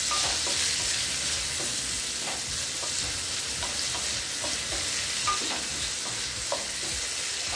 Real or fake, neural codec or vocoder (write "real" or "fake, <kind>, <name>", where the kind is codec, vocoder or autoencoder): real